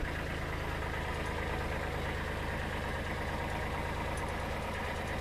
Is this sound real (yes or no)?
yes